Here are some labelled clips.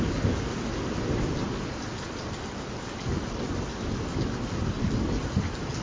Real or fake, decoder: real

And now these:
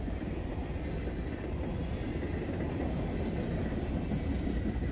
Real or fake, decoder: real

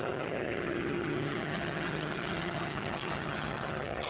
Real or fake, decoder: fake, vocoder, HiFi-GAN